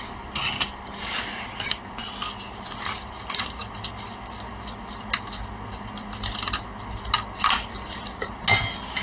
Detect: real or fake real